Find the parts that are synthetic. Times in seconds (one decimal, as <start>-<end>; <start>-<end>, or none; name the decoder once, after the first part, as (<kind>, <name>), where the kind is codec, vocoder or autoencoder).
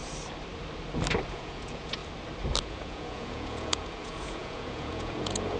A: 1.3-2.0 (vocoder, Vocos); 2.6-5.6